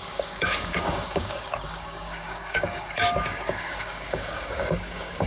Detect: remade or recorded remade